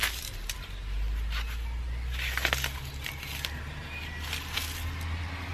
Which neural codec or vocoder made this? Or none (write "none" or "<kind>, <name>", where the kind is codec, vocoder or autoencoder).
none